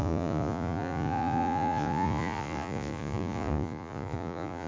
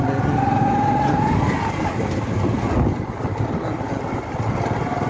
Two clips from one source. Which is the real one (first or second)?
second